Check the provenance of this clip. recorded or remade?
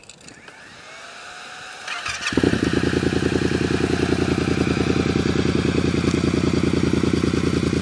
recorded